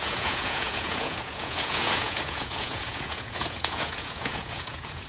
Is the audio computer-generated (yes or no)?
yes